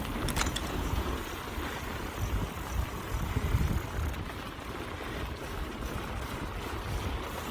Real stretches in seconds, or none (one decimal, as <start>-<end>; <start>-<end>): 0.0-0.4; 1.3-7.5

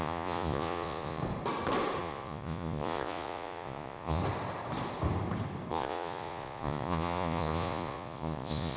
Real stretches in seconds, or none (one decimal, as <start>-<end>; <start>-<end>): 1.2-2.0; 4.2-5.7

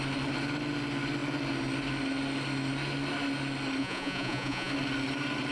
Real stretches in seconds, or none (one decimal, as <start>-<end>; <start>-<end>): 0.0-3.8; 4.7-5.5

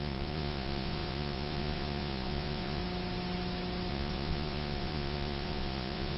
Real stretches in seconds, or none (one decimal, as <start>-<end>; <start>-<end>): 2.8-3.9